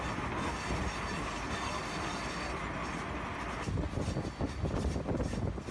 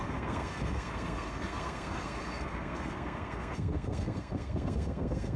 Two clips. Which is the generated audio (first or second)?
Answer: second